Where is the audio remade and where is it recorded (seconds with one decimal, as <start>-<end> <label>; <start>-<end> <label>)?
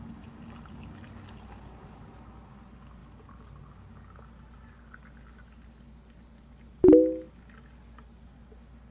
0.0-8.9 recorded